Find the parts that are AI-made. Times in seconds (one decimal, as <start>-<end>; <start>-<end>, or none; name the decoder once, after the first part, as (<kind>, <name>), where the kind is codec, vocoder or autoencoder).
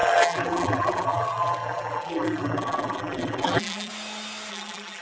0.0-3.9 (vocoder, BigVGAN v2); 4.5-5.0